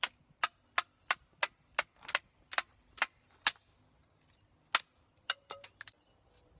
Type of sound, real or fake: real